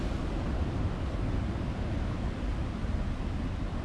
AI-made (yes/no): no